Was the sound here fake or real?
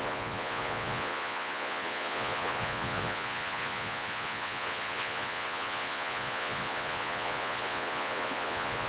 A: fake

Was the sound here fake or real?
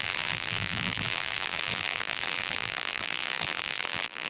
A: fake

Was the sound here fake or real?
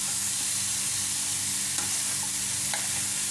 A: fake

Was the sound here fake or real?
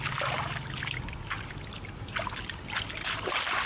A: real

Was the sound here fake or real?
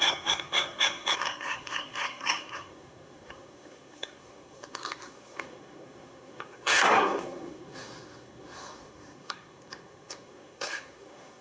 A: fake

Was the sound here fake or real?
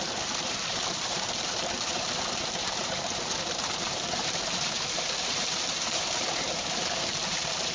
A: fake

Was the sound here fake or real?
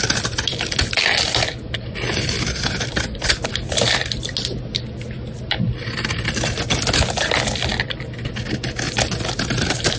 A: real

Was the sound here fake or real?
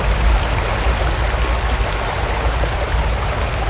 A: real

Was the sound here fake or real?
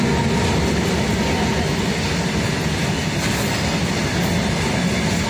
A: real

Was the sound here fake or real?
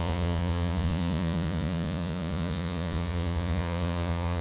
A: fake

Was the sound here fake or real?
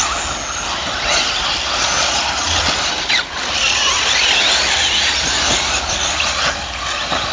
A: real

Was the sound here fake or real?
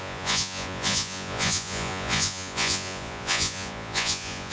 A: fake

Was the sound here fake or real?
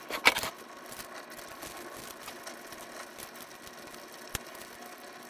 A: real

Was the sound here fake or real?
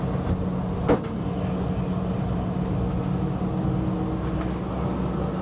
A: real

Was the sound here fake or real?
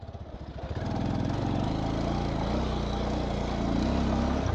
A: real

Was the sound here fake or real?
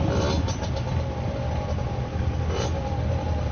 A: real